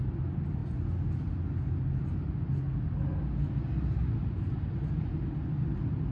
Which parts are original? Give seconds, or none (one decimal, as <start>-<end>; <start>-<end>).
0.0-6.1